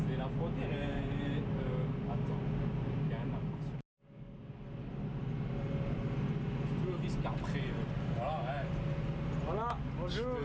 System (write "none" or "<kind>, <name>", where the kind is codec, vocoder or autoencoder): none